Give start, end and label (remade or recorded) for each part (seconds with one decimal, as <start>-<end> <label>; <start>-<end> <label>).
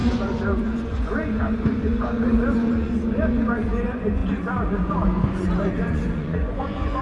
0.0-7.0 remade